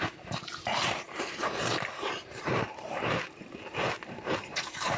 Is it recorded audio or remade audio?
remade